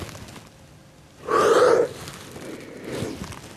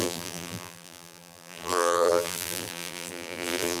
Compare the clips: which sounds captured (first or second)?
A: first